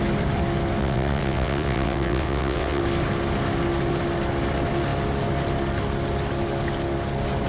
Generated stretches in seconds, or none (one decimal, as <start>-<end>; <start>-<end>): 0.8-2.8

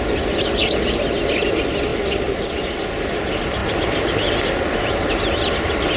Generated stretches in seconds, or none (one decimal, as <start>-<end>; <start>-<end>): none

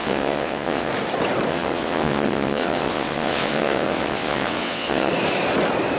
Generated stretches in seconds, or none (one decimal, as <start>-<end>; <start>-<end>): 0.0-0.9; 1.5-5.1